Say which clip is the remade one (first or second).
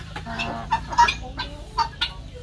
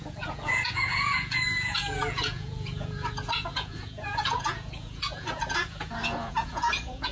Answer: second